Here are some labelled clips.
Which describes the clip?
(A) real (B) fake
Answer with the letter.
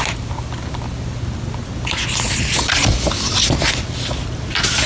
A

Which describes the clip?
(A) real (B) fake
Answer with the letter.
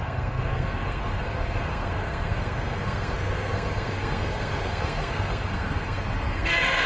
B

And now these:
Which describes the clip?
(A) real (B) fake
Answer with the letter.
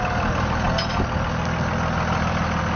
A